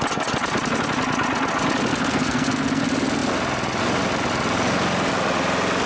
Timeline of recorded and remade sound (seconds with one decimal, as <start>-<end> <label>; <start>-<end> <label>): 0.0-1.9 recorded; 1.9-2.8 remade; 2.8-5.9 recorded